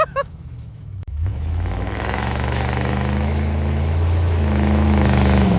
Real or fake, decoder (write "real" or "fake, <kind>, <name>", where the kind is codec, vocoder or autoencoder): fake, autoencoder, DAC-VAE